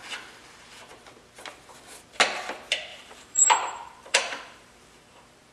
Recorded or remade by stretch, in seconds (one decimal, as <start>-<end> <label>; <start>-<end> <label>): 0.0-2.9 recorded; 2.9-5.5 remade